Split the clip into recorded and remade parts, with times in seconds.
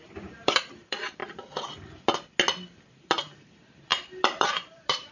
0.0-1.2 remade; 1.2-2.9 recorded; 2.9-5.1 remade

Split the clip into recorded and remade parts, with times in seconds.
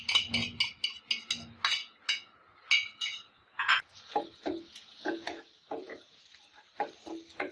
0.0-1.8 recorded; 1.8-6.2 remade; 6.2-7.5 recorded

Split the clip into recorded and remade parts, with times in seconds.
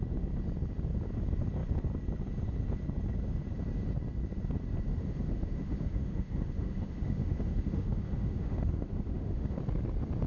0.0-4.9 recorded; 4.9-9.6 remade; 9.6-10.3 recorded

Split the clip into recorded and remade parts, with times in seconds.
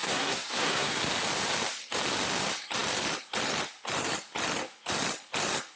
0.0-1.0 remade; 1.0-5.8 recorded